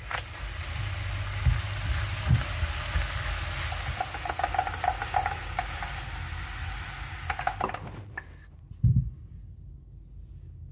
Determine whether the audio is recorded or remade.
recorded